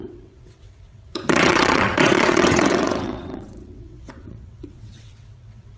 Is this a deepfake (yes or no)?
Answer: yes